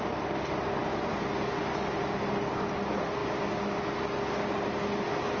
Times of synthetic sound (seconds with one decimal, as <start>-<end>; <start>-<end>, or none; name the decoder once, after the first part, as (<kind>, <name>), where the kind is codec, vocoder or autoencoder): none